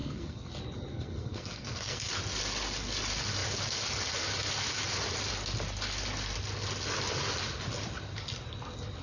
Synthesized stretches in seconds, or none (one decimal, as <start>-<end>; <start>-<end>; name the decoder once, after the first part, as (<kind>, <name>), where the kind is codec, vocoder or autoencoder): 0.0-0.5 (codec, SNAC); 0.9-2.1